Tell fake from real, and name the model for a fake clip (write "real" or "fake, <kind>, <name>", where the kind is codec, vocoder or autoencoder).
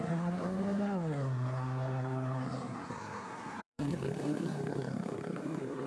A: fake, codec, SNAC